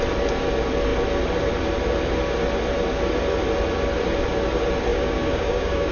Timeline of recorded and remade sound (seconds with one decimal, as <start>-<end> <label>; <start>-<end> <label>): 0.0-4.9 recorded; 4.9-5.9 remade